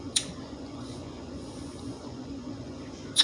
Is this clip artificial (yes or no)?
yes